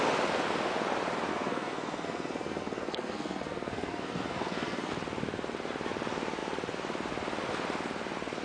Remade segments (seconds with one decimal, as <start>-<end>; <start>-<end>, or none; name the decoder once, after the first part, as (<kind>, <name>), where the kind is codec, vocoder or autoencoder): 1.3-4.9 (codec, SNAC)